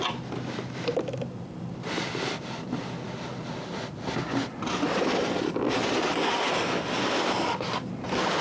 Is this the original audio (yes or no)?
yes